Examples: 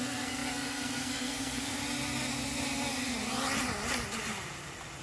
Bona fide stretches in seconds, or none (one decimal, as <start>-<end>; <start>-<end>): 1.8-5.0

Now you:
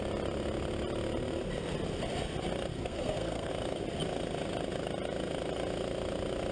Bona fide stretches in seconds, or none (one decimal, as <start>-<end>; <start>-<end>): 0.0-2.7; 3.5-6.5

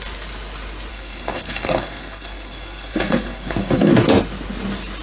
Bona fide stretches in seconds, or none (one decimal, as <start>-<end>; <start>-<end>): 0.0-0.9; 3.9-5.0

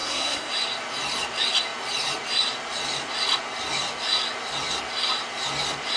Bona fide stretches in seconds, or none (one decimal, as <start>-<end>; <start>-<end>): 0.5-6.0

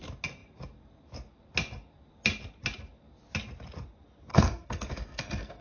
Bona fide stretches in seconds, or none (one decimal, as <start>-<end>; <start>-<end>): 0.0-4.3